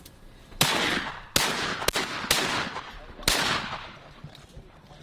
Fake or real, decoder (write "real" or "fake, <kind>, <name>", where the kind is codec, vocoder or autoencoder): real